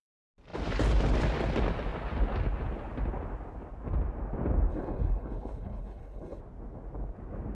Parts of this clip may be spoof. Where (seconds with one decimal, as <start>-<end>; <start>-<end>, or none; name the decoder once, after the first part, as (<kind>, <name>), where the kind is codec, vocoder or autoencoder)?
4.7-6.4 (codec, HILCodec)